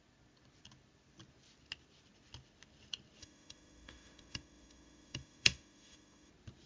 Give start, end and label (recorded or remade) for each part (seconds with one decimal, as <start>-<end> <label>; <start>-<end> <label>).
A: 0.0-3.2 recorded; 3.2-6.3 remade; 6.3-6.7 recorded